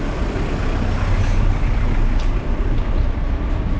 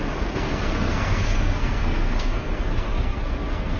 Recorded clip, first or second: first